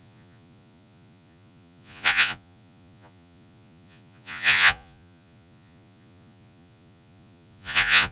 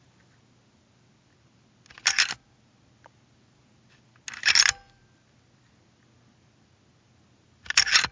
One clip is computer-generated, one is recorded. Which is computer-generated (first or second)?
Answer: first